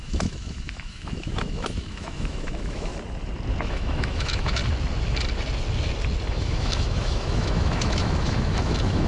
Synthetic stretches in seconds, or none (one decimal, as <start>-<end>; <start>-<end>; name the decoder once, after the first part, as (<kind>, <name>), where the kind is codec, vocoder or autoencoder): 0.0-2.9 (autoencoder, DAC-VAE); 3.7-4.6; 6.3-9.1